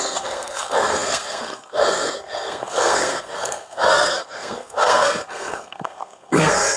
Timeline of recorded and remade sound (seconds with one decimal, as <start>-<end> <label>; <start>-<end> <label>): 0.0-6.8 remade